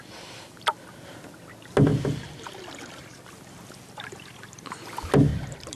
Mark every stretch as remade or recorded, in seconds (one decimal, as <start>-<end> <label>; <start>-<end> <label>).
0.0-5.3 recorded; 5.3-5.8 remade